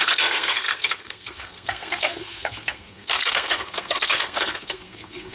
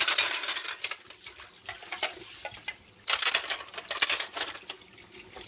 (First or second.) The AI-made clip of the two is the first